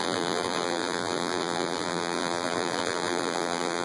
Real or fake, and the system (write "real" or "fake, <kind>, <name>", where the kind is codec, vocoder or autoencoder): fake, vocoder, BigVGAN v2